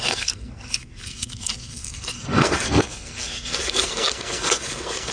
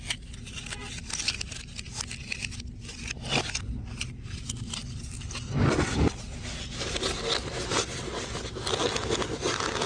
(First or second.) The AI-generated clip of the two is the first